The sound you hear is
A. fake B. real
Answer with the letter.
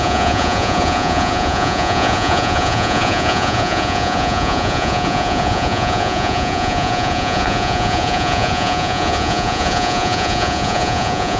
A